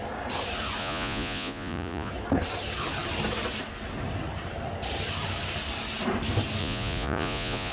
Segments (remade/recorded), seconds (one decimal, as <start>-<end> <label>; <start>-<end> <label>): 0.0-0.8 recorded; 0.8-2.1 remade; 2.1-6.6 recorded; 6.6-7.7 remade

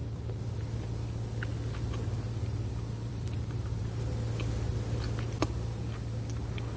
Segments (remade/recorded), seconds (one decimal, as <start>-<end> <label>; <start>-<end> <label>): 0.0-0.7 remade; 0.7-3.1 recorded; 3.1-3.8 remade; 3.8-6.8 recorded

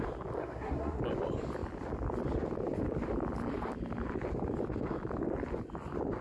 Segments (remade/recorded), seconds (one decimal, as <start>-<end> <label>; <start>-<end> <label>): 0.0-0.4 recorded; 0.4-1.0 remade; 1.0-6.2 recorded

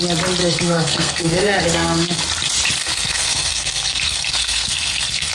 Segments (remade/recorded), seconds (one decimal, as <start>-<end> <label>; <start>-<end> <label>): 0.0-0.4 recorded; 0.4-2.2 remade; 2.2-2.8 recorded; 2.8-5.3 remade

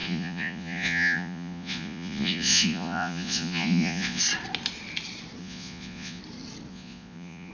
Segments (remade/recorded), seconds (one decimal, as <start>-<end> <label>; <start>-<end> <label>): 0.0-4.2 remade; 4.2-5.4 recorded; 5.4-6.2 remade; 6.2-6.7 recorded; 6.7-7.5 remade

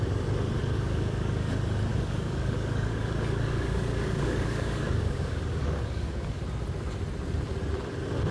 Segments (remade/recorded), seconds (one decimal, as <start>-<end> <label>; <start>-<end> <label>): 0.0-0.6 recorded; 0.6-1.5 remade; 1.5-1.9 recorded; 1.9-6.4 remade; 6.4-8.3 recorded